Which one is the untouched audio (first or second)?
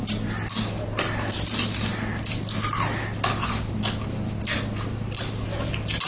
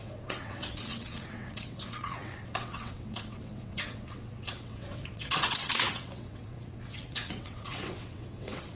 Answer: first